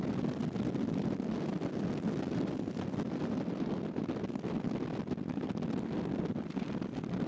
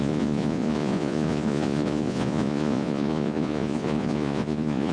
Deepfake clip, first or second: second